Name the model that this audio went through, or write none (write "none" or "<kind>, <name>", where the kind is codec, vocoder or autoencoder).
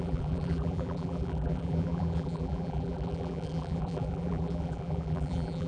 vocoder, BigVGAN v2